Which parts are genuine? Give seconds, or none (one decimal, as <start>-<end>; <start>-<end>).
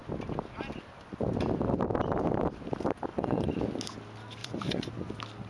0.0-3.1; 3.6-4.4; 5.1-5.5